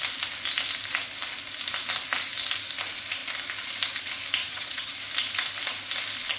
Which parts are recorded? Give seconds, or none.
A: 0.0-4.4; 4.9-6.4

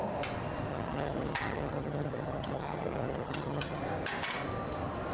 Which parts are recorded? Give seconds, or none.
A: 0.0-0.7; 3.8-5.1